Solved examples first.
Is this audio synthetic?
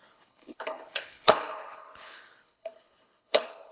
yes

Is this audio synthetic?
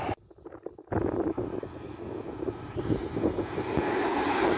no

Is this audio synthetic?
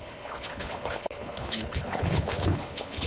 yes